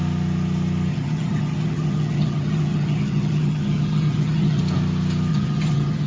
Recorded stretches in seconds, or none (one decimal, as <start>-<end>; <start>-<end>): 0.0-0.9; 4.6-5.3